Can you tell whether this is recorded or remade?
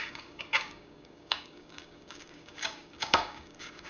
remade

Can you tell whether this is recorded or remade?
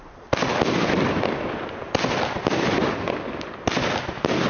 recorded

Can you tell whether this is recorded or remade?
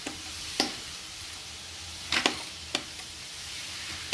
recorded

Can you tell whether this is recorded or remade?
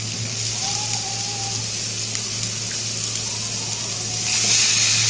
recorded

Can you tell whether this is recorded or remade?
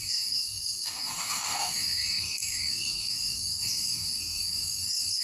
remade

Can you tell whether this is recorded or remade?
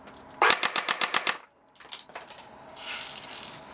recorded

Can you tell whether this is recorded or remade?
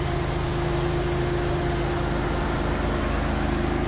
recorded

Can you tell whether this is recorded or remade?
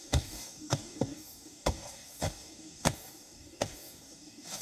remade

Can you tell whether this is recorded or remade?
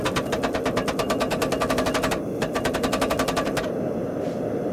recorded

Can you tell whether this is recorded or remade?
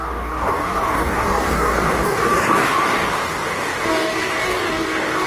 remade